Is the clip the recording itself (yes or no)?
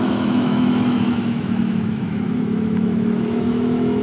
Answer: no